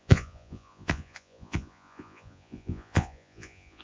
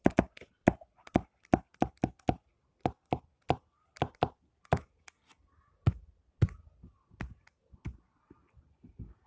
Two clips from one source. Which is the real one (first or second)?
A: second